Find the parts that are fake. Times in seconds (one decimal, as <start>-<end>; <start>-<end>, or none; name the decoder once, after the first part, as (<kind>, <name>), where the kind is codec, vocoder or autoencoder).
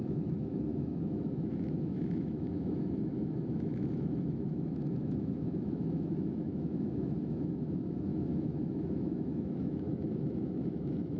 0.0-11.2 (autoencoder, DAC-VAE)